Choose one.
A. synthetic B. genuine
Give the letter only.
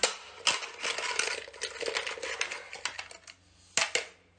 B